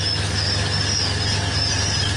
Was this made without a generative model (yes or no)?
yes